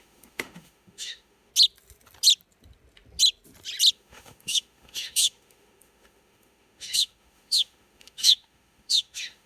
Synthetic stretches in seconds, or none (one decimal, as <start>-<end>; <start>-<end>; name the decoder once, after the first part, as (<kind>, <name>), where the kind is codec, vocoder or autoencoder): 0.0-1.5 (autoencoder, DAC-VAE); 3.9-9.5

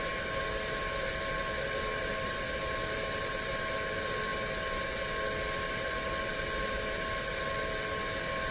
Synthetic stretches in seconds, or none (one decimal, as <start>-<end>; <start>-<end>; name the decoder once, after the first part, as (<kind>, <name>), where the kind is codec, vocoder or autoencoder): none

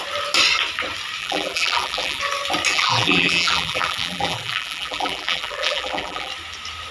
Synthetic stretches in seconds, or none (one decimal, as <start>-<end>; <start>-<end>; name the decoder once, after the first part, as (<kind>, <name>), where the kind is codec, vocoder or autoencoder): 1.2-2.2 (vocoder, BigVGAN v2); 2.7-6.3

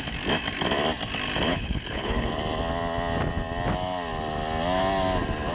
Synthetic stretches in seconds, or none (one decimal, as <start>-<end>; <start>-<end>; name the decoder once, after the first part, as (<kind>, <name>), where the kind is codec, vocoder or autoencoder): 1.5-2.3 (codec, HILCodec)

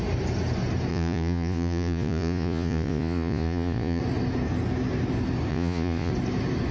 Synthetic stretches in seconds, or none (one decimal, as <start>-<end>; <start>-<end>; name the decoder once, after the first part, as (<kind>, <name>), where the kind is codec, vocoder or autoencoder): 0.9-4.0 (vocoder, Vocos); 5.5-6.1

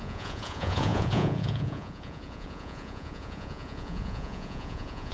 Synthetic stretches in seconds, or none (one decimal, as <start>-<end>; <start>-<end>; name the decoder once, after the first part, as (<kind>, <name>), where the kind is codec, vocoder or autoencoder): 0.0-5.1 (vocoder, Vocos)